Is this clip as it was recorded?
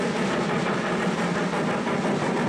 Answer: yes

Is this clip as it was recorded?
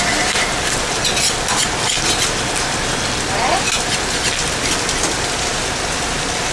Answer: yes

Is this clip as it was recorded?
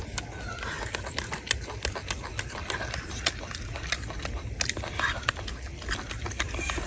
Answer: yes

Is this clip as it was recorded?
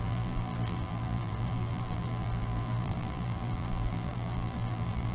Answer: no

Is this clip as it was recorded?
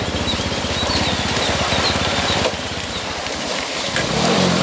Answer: no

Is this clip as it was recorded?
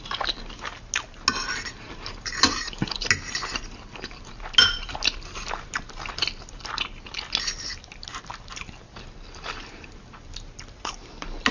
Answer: yes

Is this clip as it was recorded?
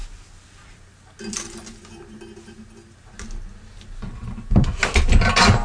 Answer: yes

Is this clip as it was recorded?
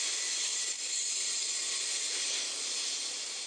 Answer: no